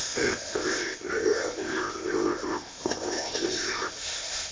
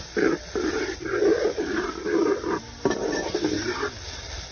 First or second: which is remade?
first